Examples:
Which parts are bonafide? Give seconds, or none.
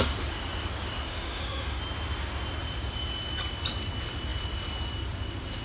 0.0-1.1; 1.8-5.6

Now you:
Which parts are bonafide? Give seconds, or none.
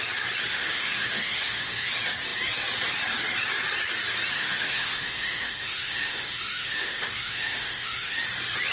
0.0-0.5; 1.9-4.3; 8.2-8.7